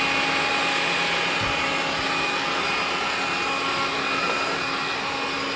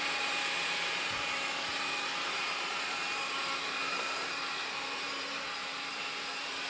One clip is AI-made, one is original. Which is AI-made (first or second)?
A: second